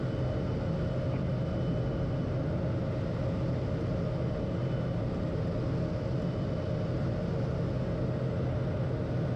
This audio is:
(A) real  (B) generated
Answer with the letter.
A